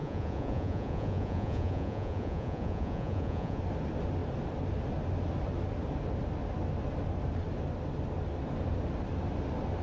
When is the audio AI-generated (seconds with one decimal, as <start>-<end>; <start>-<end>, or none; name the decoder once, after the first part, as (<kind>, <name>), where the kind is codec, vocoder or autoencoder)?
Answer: 0.0-3.6 (vocoder, Vocos)